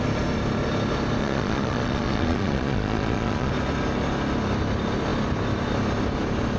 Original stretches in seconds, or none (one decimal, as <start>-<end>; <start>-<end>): 0.0-1.2; 3.5-6.6